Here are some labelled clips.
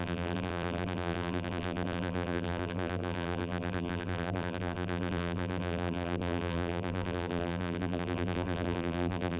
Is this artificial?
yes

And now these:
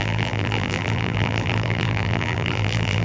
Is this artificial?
yes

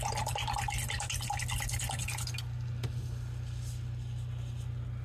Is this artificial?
no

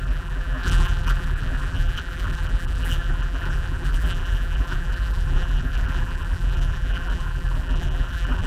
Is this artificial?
yes